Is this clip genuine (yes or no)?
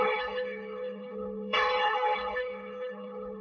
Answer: no